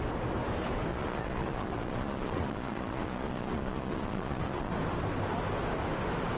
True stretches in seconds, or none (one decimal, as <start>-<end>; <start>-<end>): 0.0-0.9; 4.7-6.4